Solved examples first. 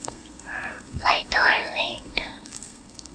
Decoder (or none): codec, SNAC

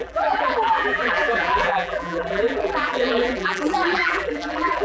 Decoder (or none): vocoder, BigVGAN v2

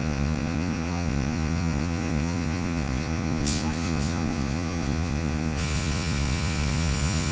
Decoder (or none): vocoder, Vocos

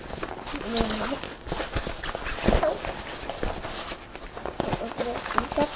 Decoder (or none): none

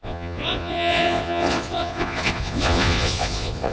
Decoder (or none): vocoder, Vocos